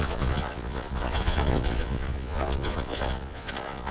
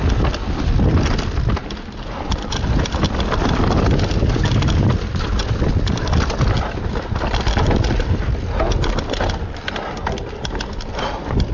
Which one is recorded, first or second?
second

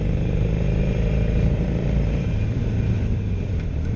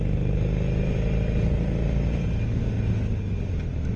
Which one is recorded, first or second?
second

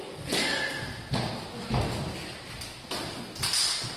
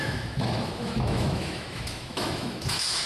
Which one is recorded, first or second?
first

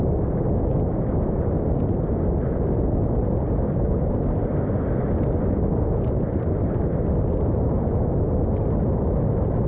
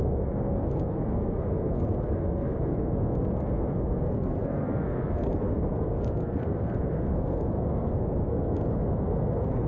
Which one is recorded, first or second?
first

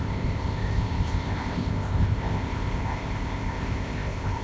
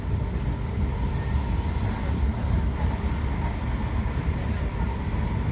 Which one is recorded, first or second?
second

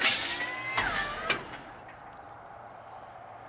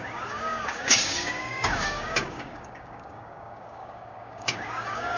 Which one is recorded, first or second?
first